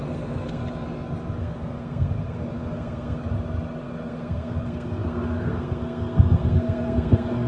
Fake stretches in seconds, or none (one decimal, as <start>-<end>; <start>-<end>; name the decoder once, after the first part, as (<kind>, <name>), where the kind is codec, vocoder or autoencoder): 0.0-0.6 (codec, SNAC); 1.4-3.3; 3.8-7.5